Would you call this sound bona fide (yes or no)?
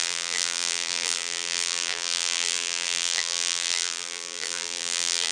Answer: no